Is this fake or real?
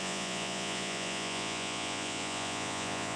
fake